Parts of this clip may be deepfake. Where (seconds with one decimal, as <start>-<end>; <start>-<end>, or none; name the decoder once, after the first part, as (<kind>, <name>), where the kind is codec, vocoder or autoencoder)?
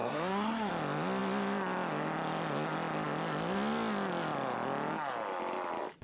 0.0-0.7 (codec, SNAC)